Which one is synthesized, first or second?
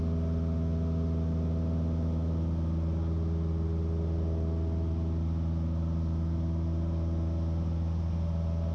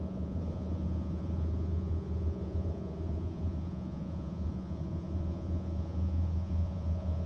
second